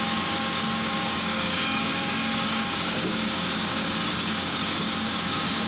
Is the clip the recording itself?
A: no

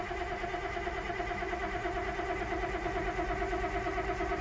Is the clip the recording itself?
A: yes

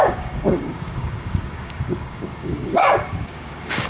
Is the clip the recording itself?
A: no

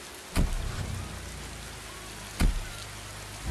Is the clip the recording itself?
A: yes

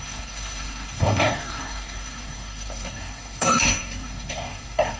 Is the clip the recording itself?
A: no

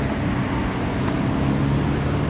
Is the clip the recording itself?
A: yes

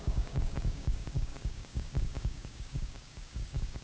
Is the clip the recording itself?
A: no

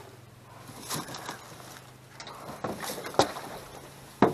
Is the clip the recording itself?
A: yes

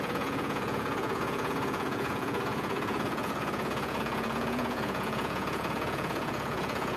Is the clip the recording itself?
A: no